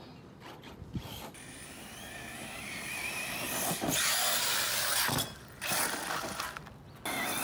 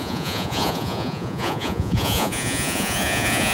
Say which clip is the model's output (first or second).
second